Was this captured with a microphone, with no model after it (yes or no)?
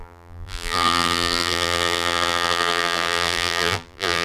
no